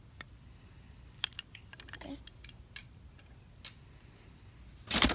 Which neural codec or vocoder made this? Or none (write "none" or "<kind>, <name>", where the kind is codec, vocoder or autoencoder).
none